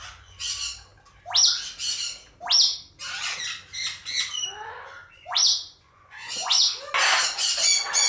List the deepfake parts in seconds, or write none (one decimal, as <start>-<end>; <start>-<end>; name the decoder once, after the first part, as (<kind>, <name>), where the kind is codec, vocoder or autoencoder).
0.0-0.5 (vocoder, Vocos); 5.0-6.9